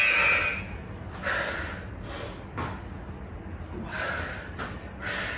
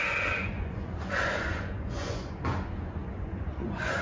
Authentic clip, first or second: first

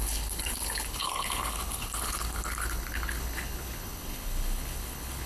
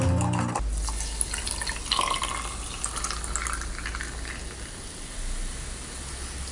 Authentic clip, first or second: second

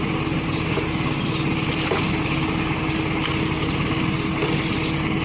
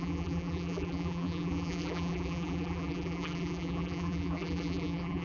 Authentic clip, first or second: first